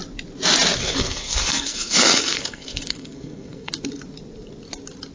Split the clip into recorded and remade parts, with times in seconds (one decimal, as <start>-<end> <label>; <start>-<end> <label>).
0.0-0.8 recorded; 0.8-3.7 remade; 3.7-5.1 recorded